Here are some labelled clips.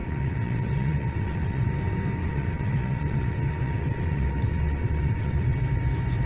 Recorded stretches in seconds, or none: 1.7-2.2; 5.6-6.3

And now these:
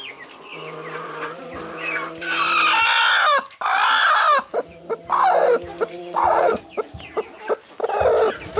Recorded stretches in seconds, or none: 0.0-6.0; 6.6-8.6

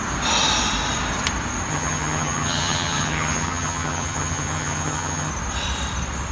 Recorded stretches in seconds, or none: 0.0-1.7; 5.3-6.3

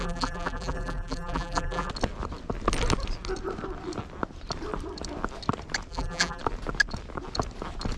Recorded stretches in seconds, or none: 1.9-5.9; 6.4-8.0

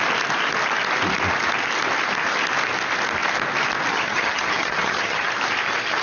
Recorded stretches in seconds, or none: 0.0-3.9; 5.3-6.0

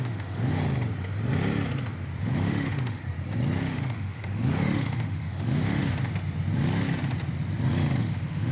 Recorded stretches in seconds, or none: 0.6-2.2; 3.0-3.6; 5.8-8.0

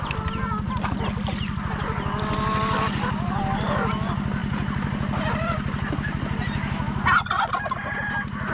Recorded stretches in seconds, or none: 0.0-8.5

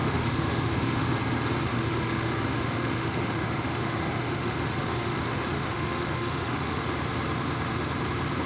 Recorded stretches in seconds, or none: 1.1-1.7; 6.8-8.5